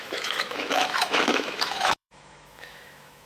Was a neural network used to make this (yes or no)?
yes